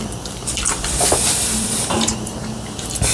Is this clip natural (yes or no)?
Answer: no